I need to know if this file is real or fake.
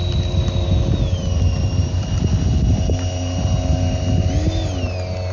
real